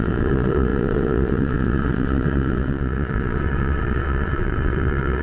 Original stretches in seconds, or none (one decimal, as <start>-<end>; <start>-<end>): none